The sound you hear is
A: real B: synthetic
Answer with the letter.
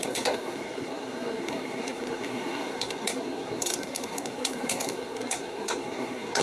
B